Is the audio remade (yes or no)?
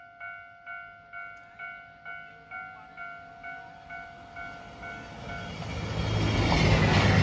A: no